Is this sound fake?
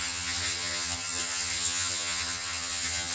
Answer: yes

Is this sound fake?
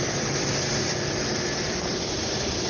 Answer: no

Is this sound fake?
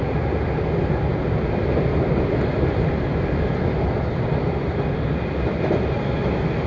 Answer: no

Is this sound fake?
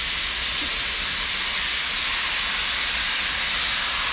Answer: no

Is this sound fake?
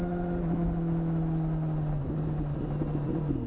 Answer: no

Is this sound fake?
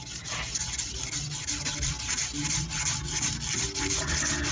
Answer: no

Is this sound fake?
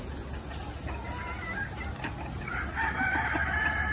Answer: no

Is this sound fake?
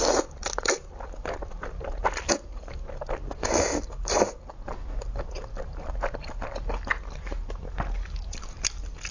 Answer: no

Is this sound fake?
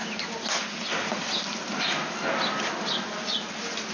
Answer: no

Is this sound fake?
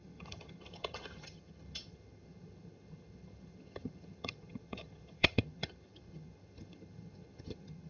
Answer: yes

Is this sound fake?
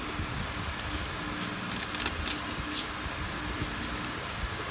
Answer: no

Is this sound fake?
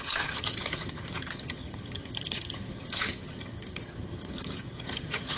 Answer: yes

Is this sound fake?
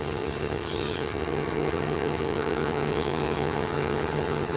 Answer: yes